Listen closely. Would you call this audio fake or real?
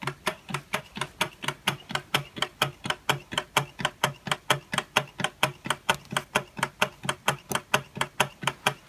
real